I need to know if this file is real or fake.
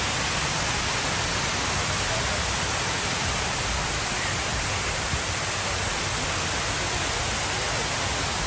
real